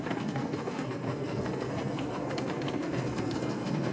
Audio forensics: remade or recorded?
remade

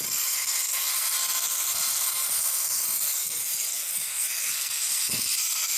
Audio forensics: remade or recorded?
remade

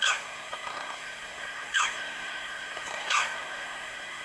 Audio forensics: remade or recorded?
remade